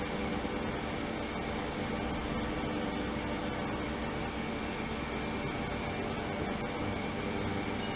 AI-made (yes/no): no